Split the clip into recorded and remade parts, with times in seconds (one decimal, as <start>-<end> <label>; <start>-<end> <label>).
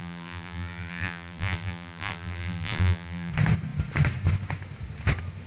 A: 0.0-3.3 remade; 3.3-5.5 recorded